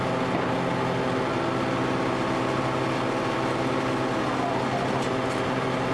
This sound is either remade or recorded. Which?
recorded